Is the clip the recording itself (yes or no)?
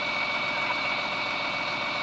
yes